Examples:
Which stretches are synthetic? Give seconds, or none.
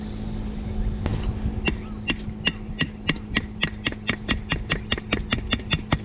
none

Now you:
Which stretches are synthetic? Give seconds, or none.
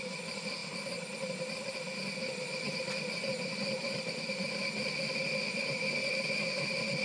none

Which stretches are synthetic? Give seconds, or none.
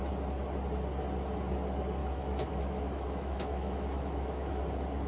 2.0-4.6 (autoencoder, DAC-VAE)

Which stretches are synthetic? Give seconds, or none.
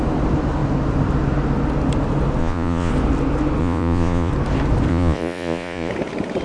2.4-2.9 (vocoder, Vocos); 3.6-4.3; 4.9-5.9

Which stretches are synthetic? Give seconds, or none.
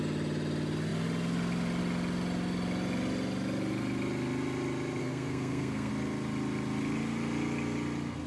5.0-5.9 (codec, SNAC)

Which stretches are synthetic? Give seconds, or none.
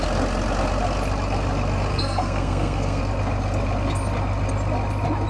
1.9-3.0 (codec, SNAC)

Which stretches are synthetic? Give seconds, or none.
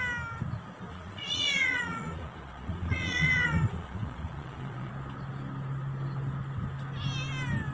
0.9-4.9 (vocoder, Vocos)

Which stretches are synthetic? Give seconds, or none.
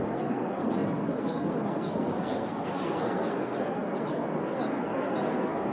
0.0-5.7 (codec, SNAC)